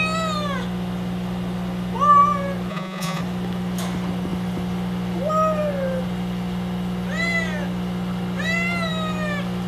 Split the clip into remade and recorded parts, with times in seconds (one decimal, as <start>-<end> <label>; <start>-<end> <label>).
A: 0.0-2.7 recorded; 2.7-3.2 remade; 3.2-9.7 recorded